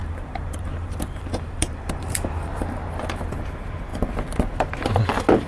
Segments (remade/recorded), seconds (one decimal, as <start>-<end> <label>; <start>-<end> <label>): 0.0-3.3 remade; 3.3-5.5 recorded